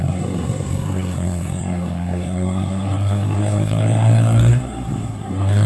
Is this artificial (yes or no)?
yes